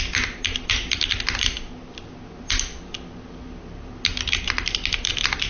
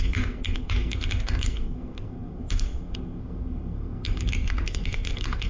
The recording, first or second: first